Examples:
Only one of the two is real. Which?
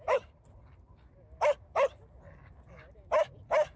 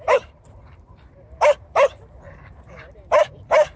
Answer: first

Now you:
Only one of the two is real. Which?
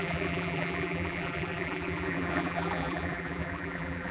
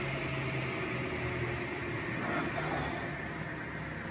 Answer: second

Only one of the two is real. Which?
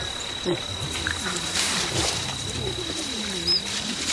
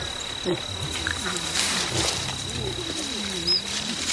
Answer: second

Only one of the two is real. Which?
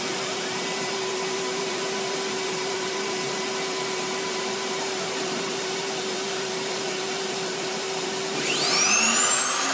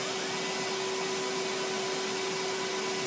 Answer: second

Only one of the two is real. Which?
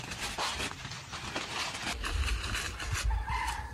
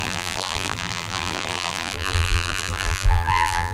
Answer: first